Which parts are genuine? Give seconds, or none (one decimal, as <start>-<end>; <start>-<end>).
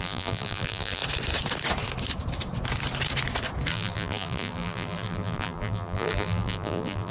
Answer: 1.0-3.7